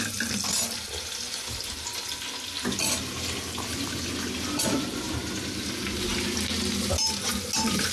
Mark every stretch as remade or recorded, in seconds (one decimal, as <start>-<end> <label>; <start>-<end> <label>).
0.0-7.9 recorded